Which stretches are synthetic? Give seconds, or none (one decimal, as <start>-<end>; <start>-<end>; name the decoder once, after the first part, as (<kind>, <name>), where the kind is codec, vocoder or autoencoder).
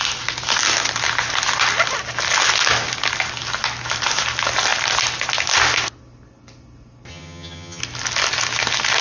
7.1-7.8 (vocoder, HiFi-GAN)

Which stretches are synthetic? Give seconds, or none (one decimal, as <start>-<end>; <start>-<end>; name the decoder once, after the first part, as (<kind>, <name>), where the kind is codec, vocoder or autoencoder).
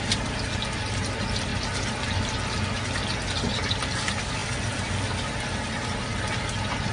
none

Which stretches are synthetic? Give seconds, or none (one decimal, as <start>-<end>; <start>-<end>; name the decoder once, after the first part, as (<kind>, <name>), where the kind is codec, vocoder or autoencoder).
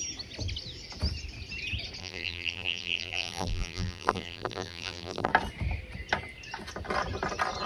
2.0-5.3 (vocoder, BigVGAN v2)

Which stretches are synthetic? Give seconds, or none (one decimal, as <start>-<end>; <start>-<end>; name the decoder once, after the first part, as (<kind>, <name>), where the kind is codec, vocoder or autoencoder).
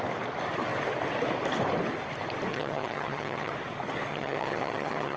2.5-3.5 (vocoder, HiFi-GAN); 4.1-5.2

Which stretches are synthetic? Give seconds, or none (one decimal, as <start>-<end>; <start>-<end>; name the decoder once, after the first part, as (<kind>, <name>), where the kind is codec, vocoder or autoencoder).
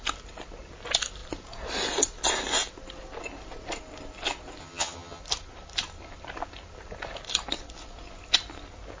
4.6-5.2 (vocoder, HiFi-GAN)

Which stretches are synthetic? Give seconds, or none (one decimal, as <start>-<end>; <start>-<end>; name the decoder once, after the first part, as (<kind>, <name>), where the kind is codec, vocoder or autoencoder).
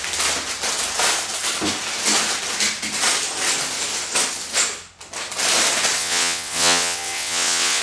6.0-7.8 (vocoder, WaveNeXt)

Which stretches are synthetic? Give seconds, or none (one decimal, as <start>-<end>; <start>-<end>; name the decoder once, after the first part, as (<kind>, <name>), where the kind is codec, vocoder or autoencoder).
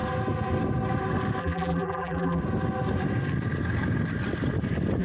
1.4-2.4 (vocoder, BigVGAN v2)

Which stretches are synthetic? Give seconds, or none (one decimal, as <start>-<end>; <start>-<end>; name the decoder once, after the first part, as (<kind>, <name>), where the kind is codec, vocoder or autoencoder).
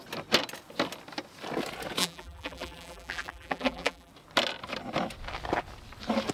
2.0-4.1 (vocoder, BigVGAN v2)